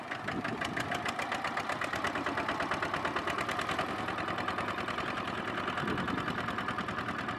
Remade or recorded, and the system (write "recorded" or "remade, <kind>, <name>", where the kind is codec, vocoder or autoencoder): recorded